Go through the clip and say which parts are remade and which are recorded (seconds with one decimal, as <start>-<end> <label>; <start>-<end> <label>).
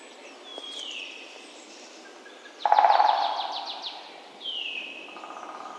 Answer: 0.0-5.8 remade